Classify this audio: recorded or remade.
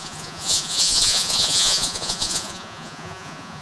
remade